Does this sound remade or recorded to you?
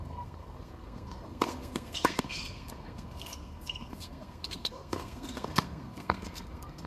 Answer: remade